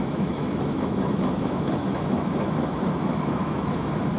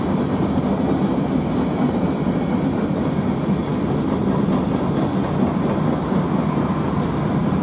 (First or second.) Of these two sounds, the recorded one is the second